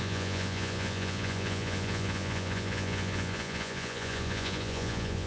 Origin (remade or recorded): remade